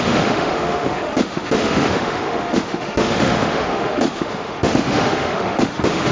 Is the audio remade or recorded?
remade